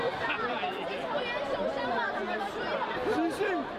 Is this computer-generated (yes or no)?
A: no